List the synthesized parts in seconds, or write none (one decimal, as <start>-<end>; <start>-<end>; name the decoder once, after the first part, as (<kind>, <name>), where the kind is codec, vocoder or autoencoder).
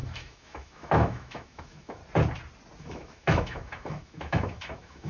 0.0-2.0 (autoencoder, DAC-VAE); 2.8-5.1